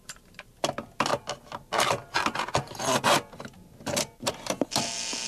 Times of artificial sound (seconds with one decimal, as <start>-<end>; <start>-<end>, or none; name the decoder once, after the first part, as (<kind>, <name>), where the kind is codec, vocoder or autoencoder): none